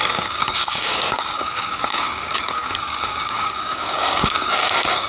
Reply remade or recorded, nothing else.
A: remade